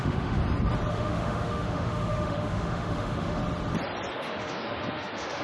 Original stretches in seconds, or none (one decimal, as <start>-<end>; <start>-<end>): 0.4-0.9; 3.4-4.1